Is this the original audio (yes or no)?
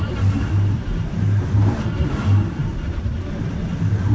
yes